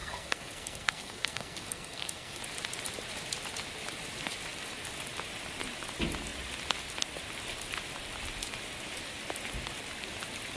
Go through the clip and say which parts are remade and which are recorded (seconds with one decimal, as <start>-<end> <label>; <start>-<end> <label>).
0.0-2.4 remade; 2.4-10.6 recorded